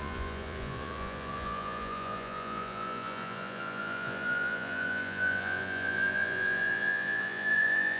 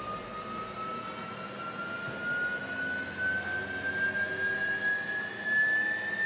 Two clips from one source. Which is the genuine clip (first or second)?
second